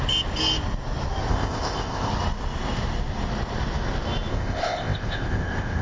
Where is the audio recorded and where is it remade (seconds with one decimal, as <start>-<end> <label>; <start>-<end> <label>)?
0.0-1.3 recorded; 1.3-2.1 remade; 2.1-4.3 recorded; 4.3-5.8 remade